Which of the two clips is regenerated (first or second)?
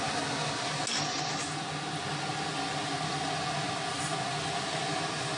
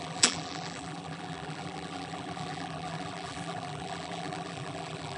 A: second